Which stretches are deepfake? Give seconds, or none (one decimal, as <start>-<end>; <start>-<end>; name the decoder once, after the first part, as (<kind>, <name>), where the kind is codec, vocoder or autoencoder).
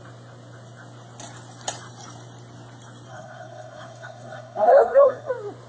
3.1-5.3 (codec, SNAC)